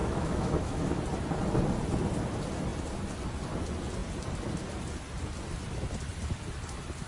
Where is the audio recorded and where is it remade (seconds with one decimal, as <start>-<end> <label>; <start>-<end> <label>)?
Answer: 0.0-1.0 remade; 1.0-7.1 recorded